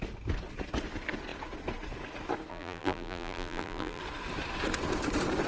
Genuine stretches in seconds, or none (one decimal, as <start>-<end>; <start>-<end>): 0.0-2.5; 4.0-5.5